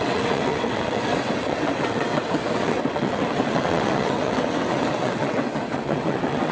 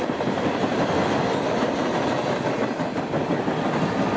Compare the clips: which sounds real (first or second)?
second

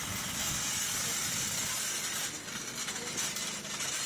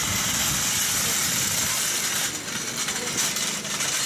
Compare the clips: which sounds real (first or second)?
first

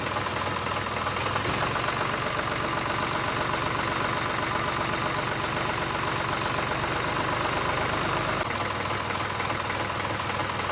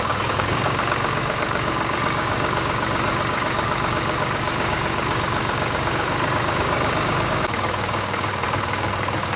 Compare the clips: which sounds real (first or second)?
first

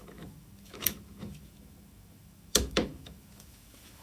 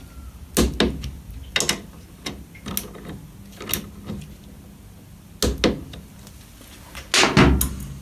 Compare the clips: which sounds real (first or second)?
second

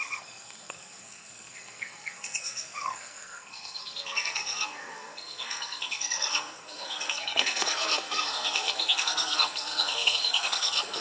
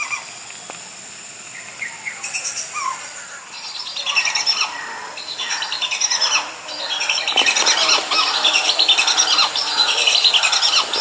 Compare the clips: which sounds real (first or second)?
second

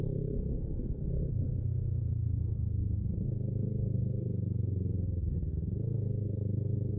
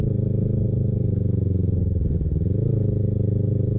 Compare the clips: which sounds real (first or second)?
second